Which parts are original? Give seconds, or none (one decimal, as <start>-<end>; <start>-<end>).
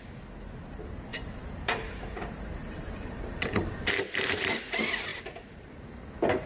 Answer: 0.0-1.1; 3.2-5.1; 5.7-6.5